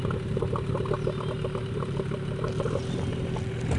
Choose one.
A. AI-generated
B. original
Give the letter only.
B